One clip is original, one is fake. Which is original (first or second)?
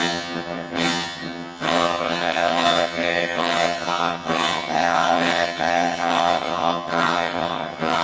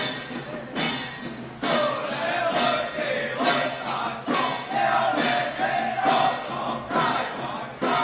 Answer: second